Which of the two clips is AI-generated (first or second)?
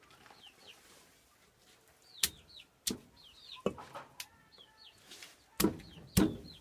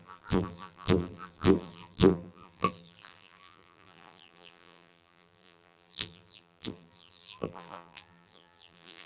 second